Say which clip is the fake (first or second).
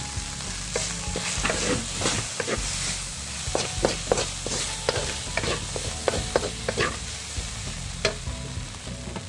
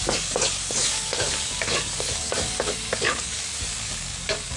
second